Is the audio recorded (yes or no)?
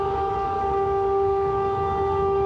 no